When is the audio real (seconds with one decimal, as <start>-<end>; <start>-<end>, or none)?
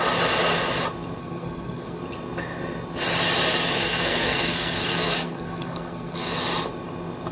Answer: 0.0-1.2; 2.0-3.8; 6.4-7.3